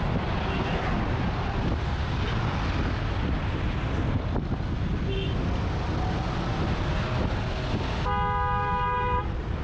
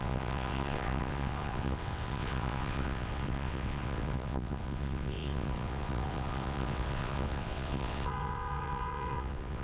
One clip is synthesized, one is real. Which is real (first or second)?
first